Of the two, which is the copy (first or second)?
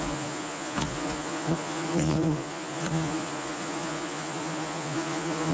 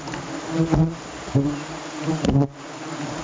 first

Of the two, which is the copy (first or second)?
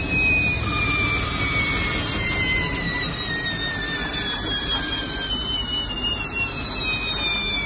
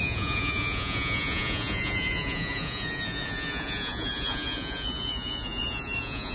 second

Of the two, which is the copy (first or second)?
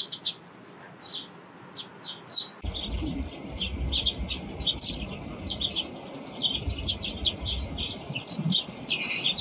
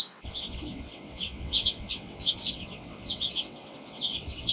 second